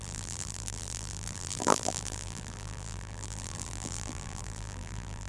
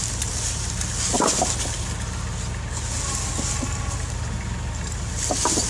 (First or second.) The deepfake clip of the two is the first